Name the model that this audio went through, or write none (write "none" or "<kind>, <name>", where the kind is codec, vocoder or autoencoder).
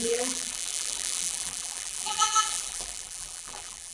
vocoder, BigVGAN v2